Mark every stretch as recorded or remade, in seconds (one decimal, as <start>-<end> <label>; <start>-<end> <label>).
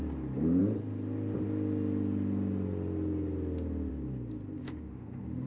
0.0-4.6 recorded; 4.6-5.5 remade